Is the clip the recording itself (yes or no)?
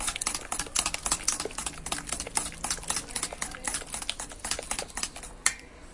yes